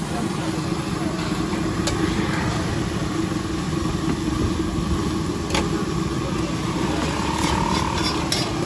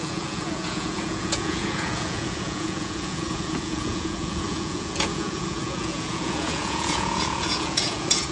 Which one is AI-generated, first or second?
second